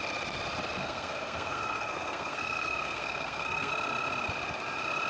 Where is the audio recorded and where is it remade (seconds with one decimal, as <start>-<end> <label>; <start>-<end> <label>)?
0.0-0.8 recorded; 0.8-3.7 remade; 3.7-5.1 recorded